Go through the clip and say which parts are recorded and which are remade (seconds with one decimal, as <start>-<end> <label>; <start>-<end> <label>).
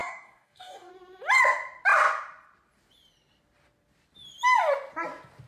0.0-0.9 remade; 0.9-5.5 recorded